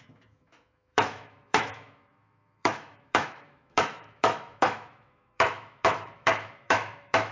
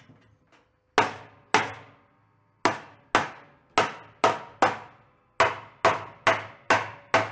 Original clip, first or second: second